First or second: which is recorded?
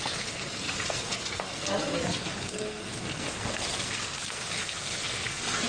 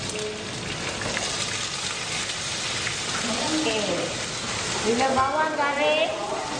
second